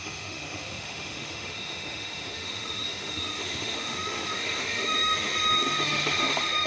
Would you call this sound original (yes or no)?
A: no